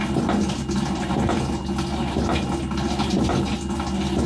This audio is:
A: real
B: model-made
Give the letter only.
A